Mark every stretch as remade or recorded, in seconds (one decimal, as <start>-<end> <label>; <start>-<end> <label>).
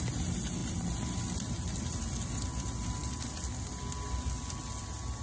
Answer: 0.0-5.2 recorded